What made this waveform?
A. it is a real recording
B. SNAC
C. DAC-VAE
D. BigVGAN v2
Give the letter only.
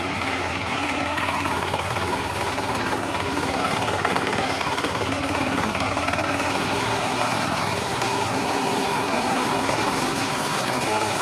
B